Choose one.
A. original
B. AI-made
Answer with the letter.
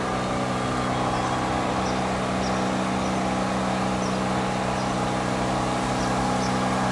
A